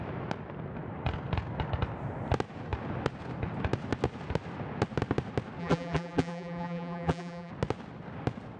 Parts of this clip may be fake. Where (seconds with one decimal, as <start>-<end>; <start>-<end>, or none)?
5.6-7.5